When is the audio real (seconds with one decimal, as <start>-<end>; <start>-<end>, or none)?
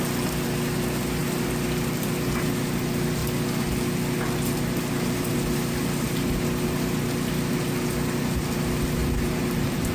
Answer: 0.0-9.0